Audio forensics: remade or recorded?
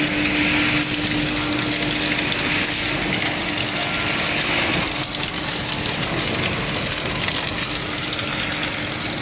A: recorded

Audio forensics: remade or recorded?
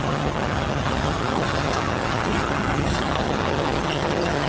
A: remade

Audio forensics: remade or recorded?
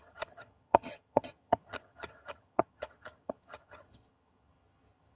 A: remade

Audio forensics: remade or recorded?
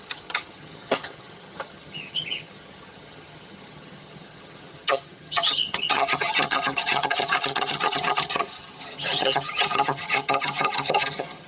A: remade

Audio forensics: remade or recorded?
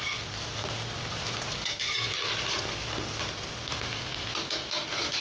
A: recorded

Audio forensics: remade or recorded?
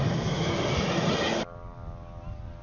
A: recorded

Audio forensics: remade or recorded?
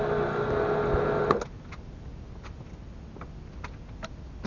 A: recorded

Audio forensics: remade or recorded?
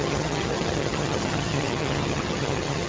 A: remade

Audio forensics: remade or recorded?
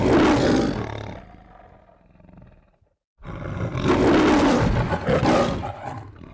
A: recorded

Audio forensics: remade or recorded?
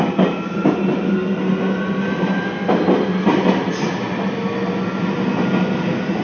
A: recorded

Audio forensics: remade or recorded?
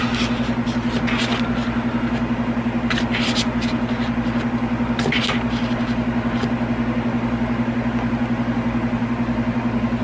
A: recorded